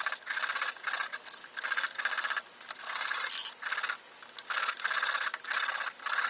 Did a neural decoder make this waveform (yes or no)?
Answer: no